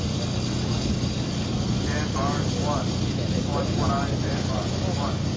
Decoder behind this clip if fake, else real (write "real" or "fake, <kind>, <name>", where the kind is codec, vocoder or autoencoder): real